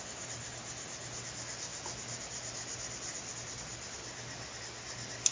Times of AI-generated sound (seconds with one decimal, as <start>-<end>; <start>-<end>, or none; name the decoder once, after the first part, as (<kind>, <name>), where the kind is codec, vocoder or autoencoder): none